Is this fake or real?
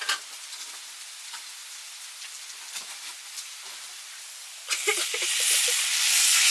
real